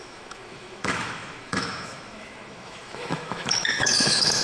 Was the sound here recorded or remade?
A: remade